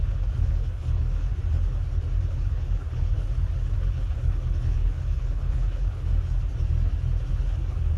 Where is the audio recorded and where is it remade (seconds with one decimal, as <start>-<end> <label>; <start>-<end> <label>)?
0.0-1.3 remade; 1.3-2.3 recorded; 2.3-6.1 remade; 6.1-7.3 recorded; 7.3-8.0 remade